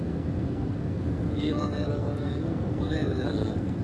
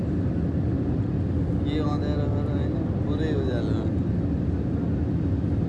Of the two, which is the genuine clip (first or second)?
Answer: second